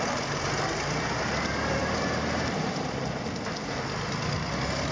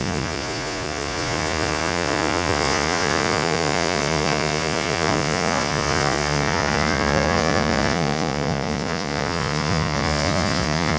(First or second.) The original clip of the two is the first